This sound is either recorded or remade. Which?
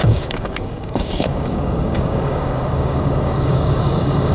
remade